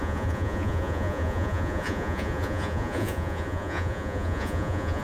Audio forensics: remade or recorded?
remade